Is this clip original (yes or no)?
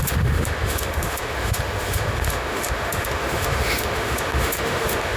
no